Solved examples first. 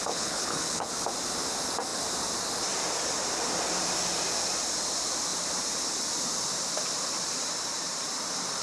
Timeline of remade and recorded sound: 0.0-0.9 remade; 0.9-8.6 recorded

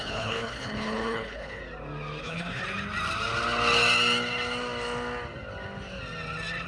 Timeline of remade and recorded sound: 0.0-1.6 remade; 1.6-2.2 recorded; 2.2-2.6 remade; 2.6-6.7 recorded

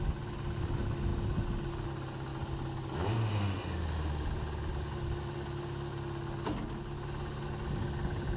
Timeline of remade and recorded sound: 0.0-8.4 recorded